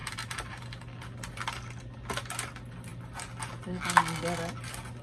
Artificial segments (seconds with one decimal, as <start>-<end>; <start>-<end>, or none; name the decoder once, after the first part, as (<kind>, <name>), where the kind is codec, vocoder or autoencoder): 0.0-0.6 (vocoder, BigVGAN v2)

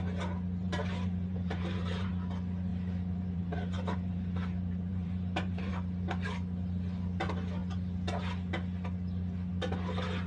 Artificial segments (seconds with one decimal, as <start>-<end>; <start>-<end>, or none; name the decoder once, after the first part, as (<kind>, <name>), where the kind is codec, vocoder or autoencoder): 0.6-2.1 (vocoder, BigVGAN v2); 2.7-5.7

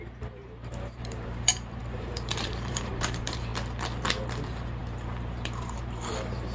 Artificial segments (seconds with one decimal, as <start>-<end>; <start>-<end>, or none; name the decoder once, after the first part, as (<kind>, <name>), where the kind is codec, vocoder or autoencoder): 0.0-3.5 (vocoder, BigVGAN v2); 4.0-6.5

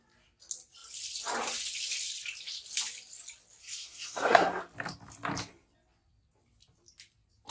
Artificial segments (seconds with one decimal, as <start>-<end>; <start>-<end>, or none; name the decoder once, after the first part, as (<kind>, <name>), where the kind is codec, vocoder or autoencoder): 3.6-4.6 (codec, SNAC)

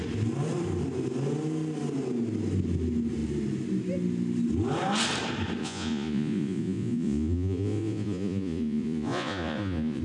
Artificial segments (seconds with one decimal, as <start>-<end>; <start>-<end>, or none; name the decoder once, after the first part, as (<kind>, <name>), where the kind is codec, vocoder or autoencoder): 5.6-10.0 (vocoder, Vocos)

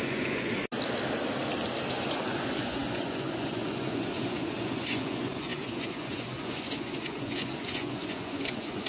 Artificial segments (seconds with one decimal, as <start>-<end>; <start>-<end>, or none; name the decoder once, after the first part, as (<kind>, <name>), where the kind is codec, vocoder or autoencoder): 0.0-0.6 (vocoder, Vocos); 1.9-8.9

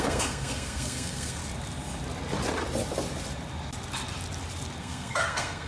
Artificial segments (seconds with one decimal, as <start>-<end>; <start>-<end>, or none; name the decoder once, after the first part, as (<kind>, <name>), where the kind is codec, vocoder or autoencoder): 0.0-1.4 (codec, SNAC); 4.8-5.7

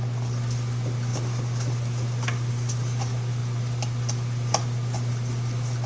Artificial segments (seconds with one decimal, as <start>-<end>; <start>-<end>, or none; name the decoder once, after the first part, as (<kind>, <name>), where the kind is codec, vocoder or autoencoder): none